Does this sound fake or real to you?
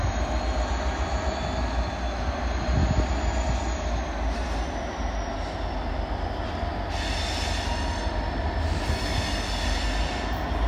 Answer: real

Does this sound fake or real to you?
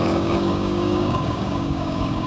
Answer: fake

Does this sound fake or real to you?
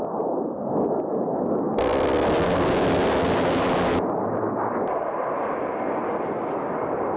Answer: real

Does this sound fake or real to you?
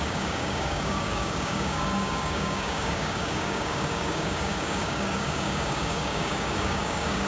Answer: fake